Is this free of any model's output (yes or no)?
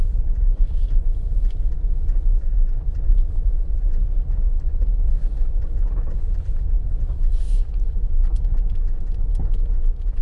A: no